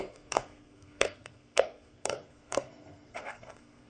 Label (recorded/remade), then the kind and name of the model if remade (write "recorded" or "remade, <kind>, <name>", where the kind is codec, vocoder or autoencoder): remade, codec, SNAC